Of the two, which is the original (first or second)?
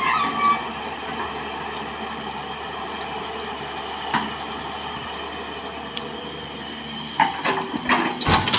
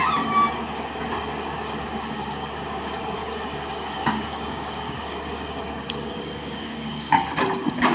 first